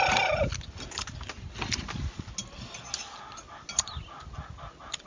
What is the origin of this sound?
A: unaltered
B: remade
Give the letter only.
A